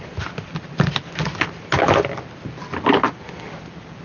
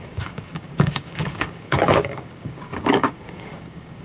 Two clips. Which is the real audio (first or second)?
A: first